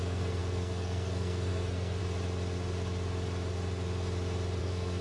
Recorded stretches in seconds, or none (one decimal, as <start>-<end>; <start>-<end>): 2.0-4.6